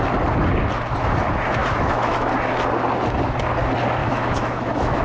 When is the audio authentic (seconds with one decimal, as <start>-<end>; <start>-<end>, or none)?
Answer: 0.0-1.6; 2.3-4.0